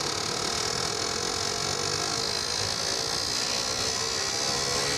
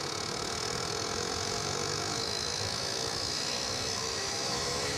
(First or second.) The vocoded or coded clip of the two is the second